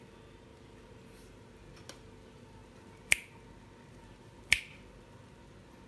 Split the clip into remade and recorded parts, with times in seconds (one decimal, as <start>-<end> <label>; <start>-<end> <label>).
0.0-0.5 recorded; 0.5-1.5 remade; 1.5-5.9 recorded